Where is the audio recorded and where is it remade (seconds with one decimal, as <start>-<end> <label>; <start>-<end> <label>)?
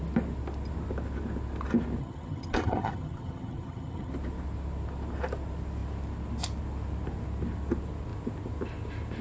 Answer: 0.0-2.0 recorded; 2.0-4.1 remade; 4.1-9.2 recorded